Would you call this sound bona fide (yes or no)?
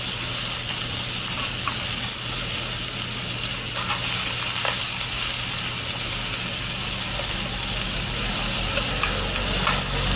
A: yes